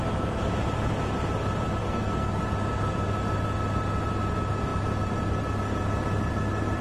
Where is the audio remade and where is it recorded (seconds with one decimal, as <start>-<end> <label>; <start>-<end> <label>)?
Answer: 0.0-1.8 recorded; 1.8-2.4 remade; 2.4-6.8 recorded